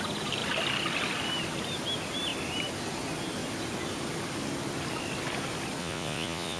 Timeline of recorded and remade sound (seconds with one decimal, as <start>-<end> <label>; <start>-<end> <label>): 0.0-5.8 recorded; 5.8-6.6 remade